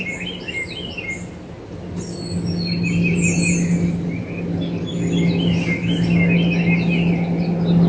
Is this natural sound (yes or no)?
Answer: yes